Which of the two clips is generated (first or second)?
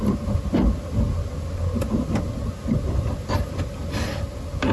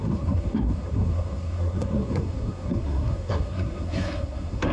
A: second